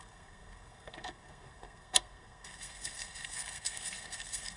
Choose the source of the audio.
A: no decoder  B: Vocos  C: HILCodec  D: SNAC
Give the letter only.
D